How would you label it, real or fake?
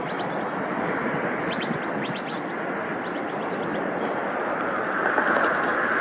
real